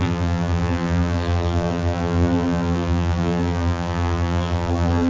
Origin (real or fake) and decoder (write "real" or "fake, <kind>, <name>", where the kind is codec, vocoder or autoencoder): fake, vocoder, BigVGAN v2